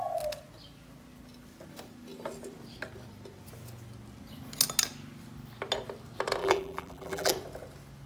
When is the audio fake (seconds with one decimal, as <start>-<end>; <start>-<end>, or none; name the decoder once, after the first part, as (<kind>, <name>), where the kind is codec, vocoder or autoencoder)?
6.4-7.3 (vocoder, BigVGAN v2)